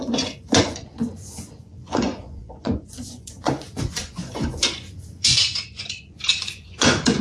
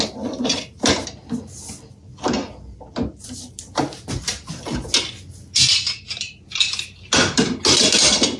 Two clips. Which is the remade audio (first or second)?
first